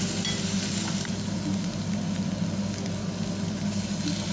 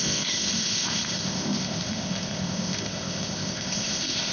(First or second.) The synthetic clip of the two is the second